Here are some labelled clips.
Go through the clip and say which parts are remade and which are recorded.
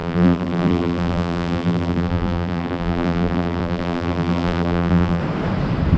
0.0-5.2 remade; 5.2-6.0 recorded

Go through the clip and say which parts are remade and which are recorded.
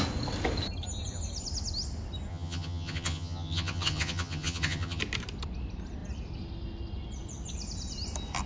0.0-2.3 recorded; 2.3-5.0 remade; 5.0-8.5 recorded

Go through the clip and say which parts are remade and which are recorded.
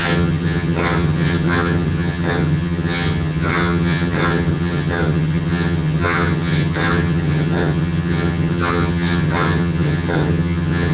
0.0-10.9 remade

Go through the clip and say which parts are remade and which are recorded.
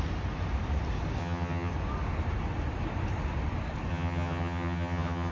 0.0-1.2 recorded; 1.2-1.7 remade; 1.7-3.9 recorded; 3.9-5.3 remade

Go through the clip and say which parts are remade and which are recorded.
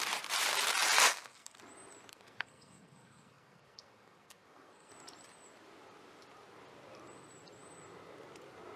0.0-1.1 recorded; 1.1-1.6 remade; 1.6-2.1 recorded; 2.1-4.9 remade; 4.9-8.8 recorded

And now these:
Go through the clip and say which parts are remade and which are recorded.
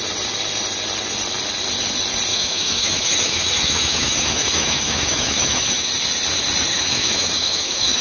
0.0-2.3 recorded; 2.3-5.9 remade; 5.9-6.7 recorded; 6.7-8.0 remade